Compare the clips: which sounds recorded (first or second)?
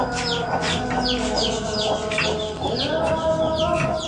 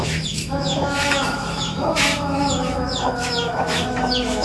first